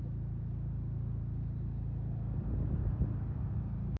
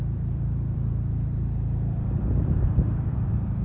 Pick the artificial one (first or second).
second